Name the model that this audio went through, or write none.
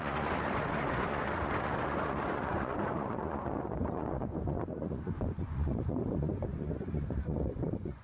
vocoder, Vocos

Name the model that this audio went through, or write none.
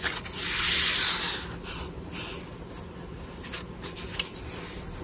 none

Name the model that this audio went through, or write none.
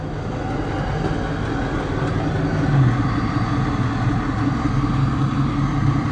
none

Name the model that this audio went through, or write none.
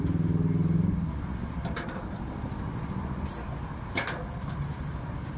none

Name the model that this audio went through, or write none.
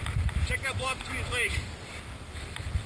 none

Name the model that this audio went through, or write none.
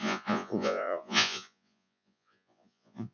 vocoder, Vocos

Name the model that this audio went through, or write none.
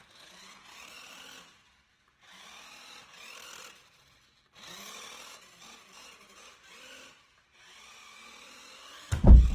none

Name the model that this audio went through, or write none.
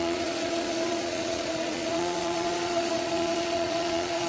vocoder, Vocos